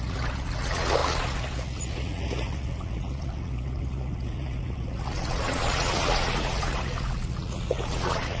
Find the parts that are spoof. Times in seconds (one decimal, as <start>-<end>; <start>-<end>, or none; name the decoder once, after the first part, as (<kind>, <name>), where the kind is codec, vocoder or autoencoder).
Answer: 0.0-8.4 (vocoder, Vocos)